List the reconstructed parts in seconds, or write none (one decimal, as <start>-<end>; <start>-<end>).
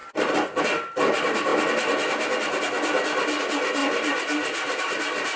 none